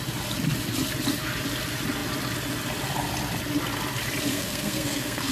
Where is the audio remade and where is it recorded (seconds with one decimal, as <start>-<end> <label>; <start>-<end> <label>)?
0.0-4.3 recorded; 4.3-5.3 remade